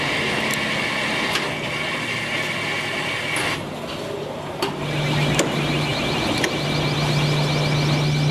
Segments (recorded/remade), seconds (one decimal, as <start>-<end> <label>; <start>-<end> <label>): 0.0-8.3 recorded